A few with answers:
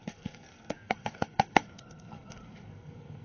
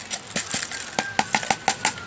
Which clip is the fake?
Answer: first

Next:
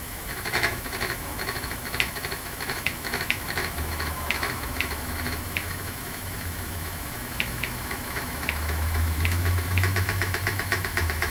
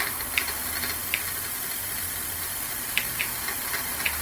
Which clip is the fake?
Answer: first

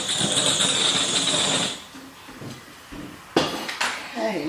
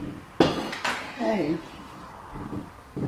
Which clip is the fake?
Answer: first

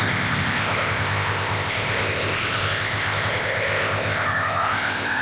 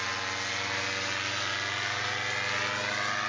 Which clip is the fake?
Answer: first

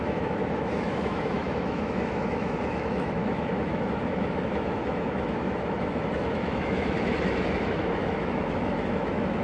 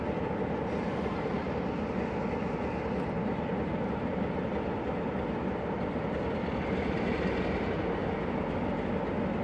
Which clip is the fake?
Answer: first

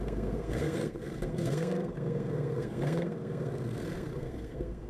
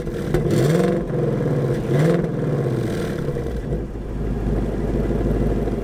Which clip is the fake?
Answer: first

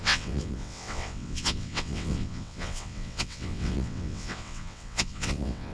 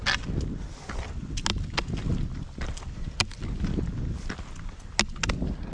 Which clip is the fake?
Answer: first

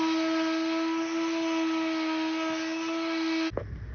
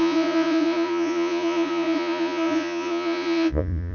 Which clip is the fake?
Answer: second